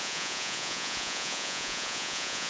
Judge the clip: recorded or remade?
remade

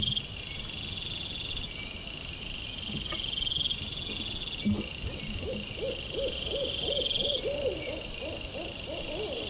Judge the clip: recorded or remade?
recorded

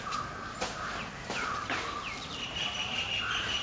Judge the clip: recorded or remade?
recorded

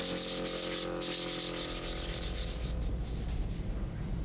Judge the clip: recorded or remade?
recorded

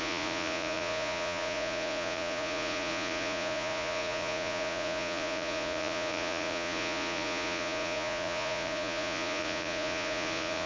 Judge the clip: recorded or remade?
remade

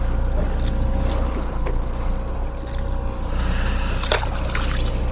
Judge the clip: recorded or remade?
recorded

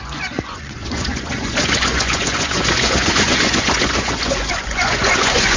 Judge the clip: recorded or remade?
remade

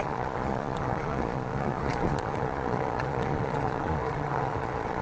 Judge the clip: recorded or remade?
remade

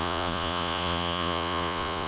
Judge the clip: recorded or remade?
remade